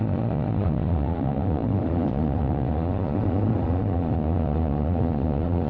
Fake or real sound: fake